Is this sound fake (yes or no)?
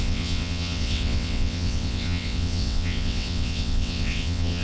yes